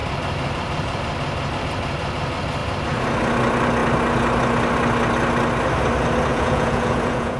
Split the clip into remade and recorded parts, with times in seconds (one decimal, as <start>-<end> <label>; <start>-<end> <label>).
0.0-6.3 recorded; 6.3-7.4 remade

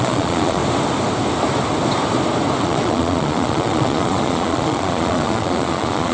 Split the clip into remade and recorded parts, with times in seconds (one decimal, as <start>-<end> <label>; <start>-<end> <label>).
0.0-0.6 remade; 0.6-2.6 recorded; 2.6-6.1 remade

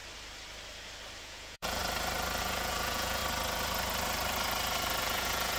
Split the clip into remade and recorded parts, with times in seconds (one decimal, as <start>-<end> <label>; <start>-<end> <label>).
0.0-1.2 recorded; 1.2-1.8 remade; 1.8-2.4 recorded; 2.4-3.2 remade; 3.2-5.0 recorded; 5.0-5.6 remade